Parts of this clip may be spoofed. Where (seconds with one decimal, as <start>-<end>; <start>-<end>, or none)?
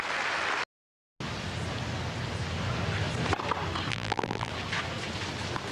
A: 3.9-4.5